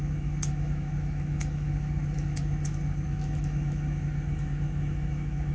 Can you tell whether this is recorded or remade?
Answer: remade